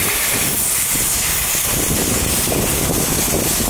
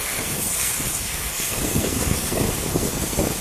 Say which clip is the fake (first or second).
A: second